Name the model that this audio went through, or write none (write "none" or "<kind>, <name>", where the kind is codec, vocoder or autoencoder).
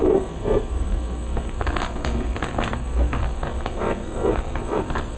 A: codec, SNAC